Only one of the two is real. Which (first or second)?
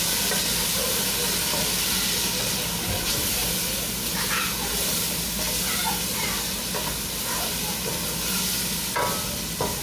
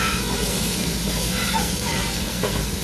first